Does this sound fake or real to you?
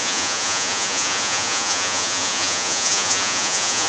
fake